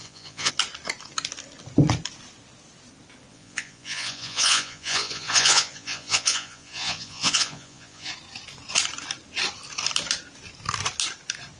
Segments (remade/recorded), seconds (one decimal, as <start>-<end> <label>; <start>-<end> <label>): 0.0-0.5 remade; 0.5-3.3 recorded; 3.3-8.1 remade; 8.1-11.6 recorded